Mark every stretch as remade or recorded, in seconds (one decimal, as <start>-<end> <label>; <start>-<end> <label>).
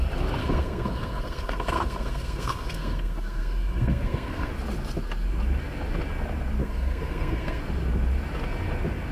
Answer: 0.0-0.4 recorded; 0.4-4.5 remade; 4.5-6.6 recorded; 6.6-7.6 remade; 7.6-9.1 recorded